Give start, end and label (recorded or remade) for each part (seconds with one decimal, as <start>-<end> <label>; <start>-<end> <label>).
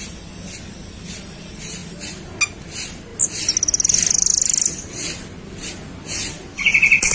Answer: 0.0-7.1 recorded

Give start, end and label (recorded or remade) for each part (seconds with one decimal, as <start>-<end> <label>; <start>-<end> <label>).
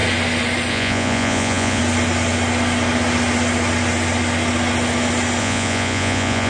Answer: 0.0-0.7 recorded; 0.7-1.8 remade; 1.8-5.4 recorded; 5.4-6.5 remade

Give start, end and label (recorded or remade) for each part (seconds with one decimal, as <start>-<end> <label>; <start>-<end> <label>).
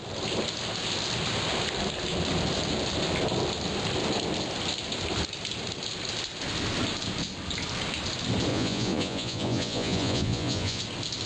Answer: 0.0-8.5 recorded; 8.5-10.8 remade; 10.8-11.3 recorded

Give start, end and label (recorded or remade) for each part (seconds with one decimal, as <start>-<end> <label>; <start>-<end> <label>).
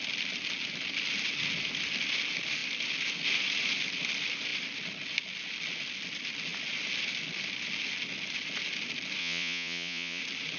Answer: 0.0-9.2 recorded; 9.2-10.2 remade; 10.2-10.6 recorded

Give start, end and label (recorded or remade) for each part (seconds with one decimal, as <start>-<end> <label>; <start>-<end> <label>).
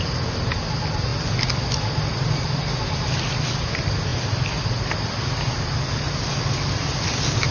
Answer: 0.0-7.5 recorded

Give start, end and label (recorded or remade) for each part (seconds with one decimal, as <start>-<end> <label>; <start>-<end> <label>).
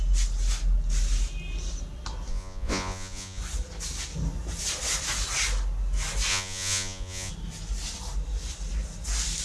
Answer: 0.0-2.3 recorded; 2.3-3.4 remade; 3.4-6.3 recorded; 6.3-7.3 remade; 7.3-9.4 recorded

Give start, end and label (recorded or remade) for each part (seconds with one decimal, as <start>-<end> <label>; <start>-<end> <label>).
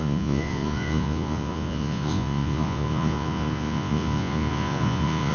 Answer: 0.0-5.3 remade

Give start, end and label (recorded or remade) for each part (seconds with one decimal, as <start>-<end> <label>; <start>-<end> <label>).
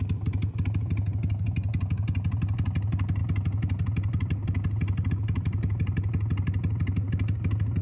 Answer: 0.0-7.8 recorded